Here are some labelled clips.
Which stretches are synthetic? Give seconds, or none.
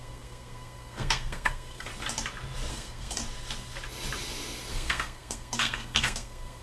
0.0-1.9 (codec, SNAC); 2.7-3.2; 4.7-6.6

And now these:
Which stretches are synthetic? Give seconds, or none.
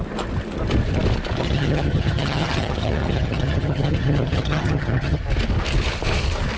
1.4-5.2 (vocoder, HiFi-GAN)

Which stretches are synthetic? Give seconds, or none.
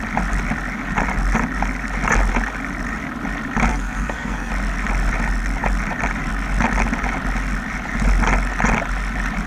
3.7-4.5 (codec, SNAC)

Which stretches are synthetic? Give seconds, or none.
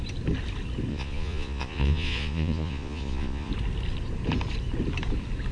0.9-3.5 (vocoder, Vocos)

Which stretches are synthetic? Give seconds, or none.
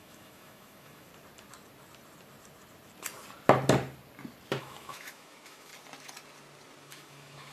0.0-1.1 (autoencoder, DAC-VAE); 4.6-5.7; 6.8-7.5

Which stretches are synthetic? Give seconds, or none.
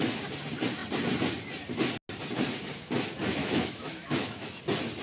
3.4-4.6 (autoencoder, DAC-VAE)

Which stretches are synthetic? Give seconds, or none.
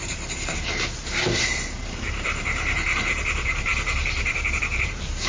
0.0-5.3 (vocoder, BigVGAN v2)